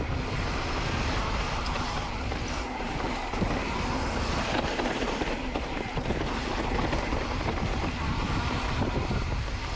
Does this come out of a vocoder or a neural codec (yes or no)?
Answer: no